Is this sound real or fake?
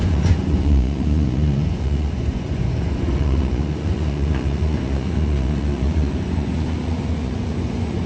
fake